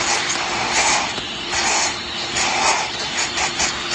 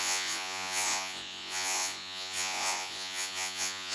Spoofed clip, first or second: second